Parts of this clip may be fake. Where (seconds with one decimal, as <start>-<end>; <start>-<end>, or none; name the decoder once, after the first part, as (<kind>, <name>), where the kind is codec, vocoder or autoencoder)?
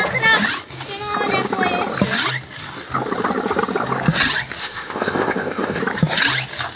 4.6-5.8 (codec, ZipCodec)